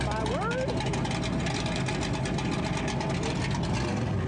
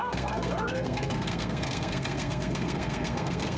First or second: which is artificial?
second